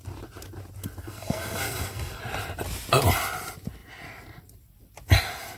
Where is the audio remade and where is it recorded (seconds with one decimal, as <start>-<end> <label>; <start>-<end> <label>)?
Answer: 0.0-1.0 recorded; 1.0-2.2 remade; 2.2-5.6 recorded